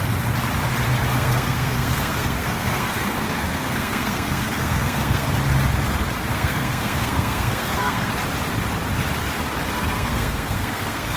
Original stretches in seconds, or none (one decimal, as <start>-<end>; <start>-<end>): 0.0-1.1; 5.3-6.3; 8.1-9.8